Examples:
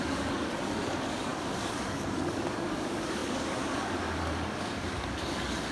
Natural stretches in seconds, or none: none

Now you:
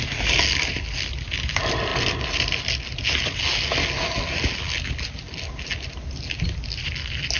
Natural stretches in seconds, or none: 0.0-7.4

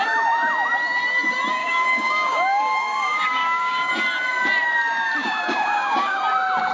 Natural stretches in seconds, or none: 0.0-1.6; 3.9-5.2; 6.2-6.7

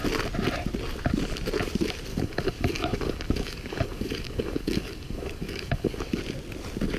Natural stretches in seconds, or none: 0.0-2.1; 6.2-7.0

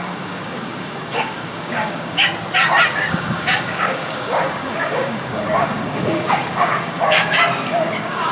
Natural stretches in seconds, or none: 2.3-3.1

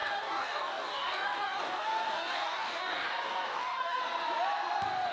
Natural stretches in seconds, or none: 4.0-5.1